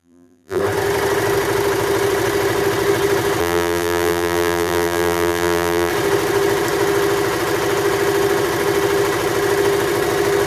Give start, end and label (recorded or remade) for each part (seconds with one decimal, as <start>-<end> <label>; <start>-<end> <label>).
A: 0.0-0.6 remade; 0.6-3.4 recorded; 3.4-5.9 remade; 5.9-10.5 recorded